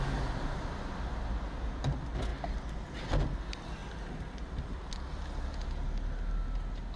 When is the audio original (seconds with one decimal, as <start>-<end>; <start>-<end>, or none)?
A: 0.0-7.0